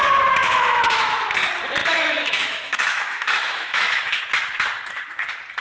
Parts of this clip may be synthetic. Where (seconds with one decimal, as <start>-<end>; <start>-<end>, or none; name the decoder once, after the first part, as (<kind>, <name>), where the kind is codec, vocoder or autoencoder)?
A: 0.4-1.2 (autoencoder, DAC-VAE); 1.8-4.2